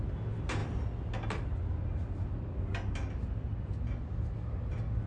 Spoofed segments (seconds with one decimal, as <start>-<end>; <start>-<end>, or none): none